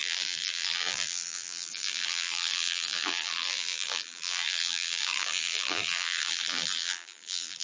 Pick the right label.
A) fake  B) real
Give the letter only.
A